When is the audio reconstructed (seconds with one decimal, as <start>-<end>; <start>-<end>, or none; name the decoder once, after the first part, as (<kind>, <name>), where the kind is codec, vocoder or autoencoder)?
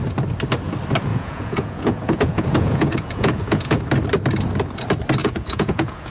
1.1-3.8 (vocoder, Vocos); 5.2-6.1